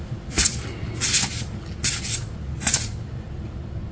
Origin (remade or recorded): recorded